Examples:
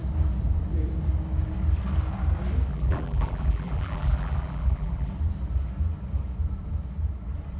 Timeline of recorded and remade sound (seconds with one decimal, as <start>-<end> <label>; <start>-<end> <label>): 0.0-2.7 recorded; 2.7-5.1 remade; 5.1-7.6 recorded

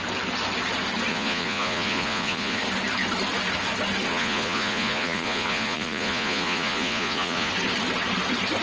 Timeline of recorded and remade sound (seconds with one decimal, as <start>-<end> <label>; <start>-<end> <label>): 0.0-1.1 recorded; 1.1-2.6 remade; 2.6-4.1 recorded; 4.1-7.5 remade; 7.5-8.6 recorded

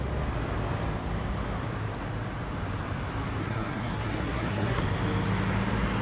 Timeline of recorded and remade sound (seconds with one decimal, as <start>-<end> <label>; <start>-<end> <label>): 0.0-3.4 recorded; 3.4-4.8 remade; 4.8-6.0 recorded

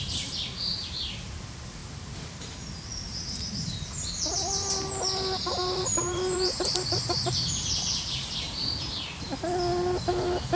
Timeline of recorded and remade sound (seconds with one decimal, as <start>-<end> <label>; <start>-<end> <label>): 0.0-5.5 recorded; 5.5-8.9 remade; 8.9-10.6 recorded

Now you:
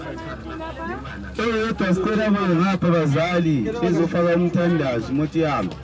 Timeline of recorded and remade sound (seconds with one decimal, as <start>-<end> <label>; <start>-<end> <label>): 0.0-1.4 recorded; 1.4-4.9 remade; 4.9-5.8 recorded

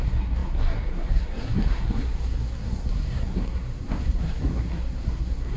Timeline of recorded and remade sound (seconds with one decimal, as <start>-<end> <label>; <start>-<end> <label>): 0.0-5.6 remade